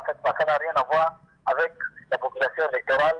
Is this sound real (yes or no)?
no